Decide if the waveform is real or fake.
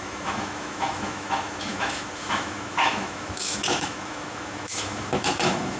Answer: fake